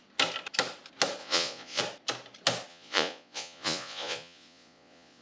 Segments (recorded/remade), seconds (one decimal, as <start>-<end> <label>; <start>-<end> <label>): 0.0-1.2 recorded; 1.2-1.8 remade; 1.8-2.7 recorded; 2.7-5.2 remade